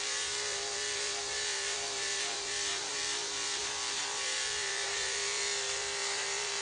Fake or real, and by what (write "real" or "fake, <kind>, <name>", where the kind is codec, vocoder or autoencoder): fake, vocoder, BigVGAN v2